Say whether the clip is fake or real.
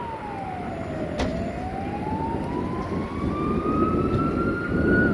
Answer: real